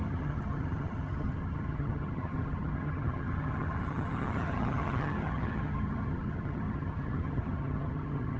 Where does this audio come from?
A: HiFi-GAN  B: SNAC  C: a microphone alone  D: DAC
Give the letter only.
A